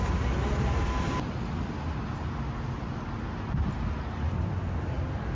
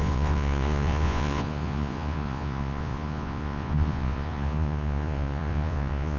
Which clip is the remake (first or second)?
second